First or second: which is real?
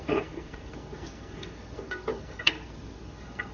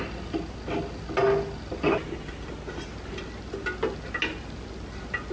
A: second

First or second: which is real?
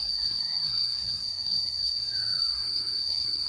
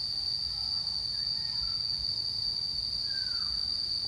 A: second